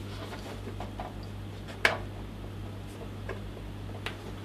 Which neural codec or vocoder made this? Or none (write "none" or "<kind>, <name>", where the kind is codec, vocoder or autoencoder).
none